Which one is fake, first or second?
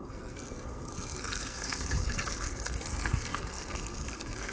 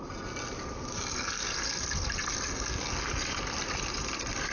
first